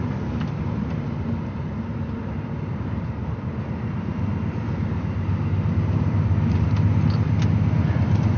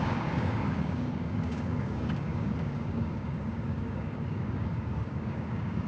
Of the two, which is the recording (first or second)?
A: first